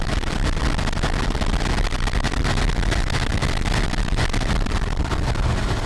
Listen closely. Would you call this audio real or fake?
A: real